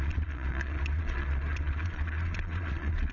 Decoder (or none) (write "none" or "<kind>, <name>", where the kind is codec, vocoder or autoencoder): vocoder, Vocos